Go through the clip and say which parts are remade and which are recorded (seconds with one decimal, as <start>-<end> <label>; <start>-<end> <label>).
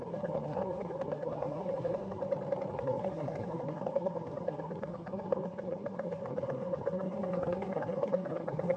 0.0-2.2 remade; 2.2-2.7 recorded; 2.7-8.8 remade